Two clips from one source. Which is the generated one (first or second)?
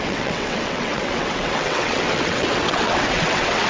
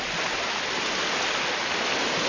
first